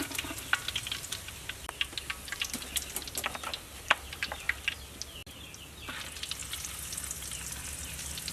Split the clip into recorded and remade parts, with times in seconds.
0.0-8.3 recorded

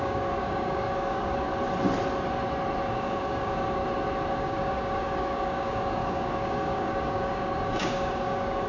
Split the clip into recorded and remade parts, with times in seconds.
0.0-1.5 remade; 1.5-2.9 recorded; 2.9-3.8 remade; 3.8-4.3 recorded; 4.3-8.7 remade

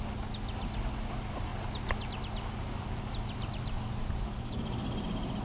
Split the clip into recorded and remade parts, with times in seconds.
0.0-5.4 recorded